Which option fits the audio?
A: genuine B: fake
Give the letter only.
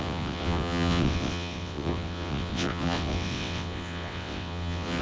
B